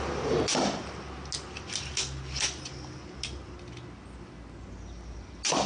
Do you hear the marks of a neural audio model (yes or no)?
no